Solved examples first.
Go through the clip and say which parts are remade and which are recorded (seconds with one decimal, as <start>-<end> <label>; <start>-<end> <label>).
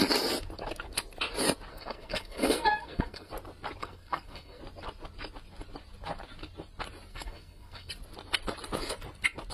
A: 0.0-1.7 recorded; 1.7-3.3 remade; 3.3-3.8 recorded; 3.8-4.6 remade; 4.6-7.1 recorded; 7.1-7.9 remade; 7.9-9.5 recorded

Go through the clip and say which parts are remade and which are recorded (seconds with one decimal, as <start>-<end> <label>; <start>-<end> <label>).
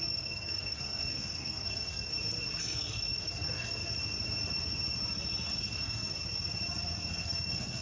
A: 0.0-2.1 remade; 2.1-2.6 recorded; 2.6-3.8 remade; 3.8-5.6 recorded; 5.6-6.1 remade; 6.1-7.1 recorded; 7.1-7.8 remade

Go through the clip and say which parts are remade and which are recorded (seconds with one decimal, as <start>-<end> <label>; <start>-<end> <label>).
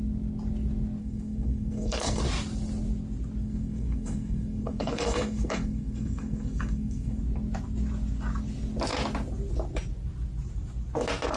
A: 0.0-1.0 recorded; 1.0-2.2 remade; 2.2-3.4 recorded; 3.4-7.2 remade; 7.2-11.4 recorded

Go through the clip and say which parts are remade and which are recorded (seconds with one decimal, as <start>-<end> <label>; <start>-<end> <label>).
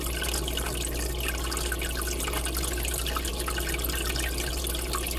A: 0.0-5.2 recorded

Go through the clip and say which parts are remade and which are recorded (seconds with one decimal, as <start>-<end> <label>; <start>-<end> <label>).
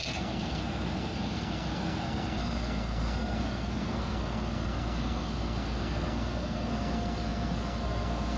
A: 0.0-8.4 remade